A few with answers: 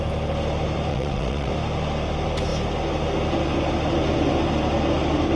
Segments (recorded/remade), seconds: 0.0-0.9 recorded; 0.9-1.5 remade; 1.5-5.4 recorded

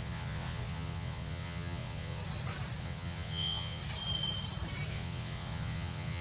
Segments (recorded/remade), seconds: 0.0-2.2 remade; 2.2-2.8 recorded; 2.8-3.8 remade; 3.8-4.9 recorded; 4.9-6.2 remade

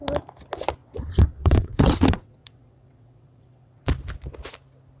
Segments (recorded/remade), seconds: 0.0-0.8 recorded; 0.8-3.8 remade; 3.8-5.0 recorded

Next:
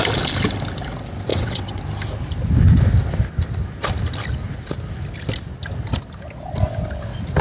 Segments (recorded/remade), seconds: 0.0-1.3 recorded; 1.3-1.8 remade; 1.8-7.4 recorded

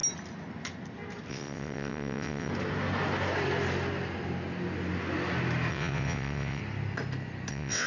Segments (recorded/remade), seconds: 0.0-1.3 recorded; 1.3-2.5 remade; 2.5-5.7 recorded; 5.7-6.6 remade; 6.6-7.5 recorded; 7.5-7.9 remade

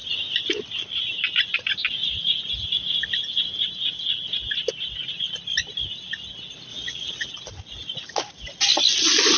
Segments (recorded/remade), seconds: 0.0-6.7 recorded; 6.7-7.3 remade; 7.3-9.4 recorded